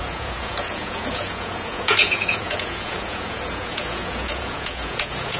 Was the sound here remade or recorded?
remade